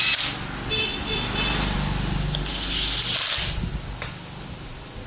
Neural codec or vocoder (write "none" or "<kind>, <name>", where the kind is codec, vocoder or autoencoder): none